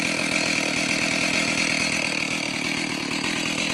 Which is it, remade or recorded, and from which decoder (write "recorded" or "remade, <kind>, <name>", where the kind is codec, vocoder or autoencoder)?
recorded